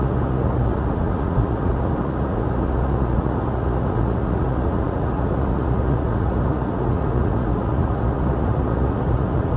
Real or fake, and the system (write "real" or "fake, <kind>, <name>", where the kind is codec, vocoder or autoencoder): fake, vocoder, Vocos